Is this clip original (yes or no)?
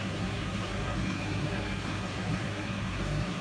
no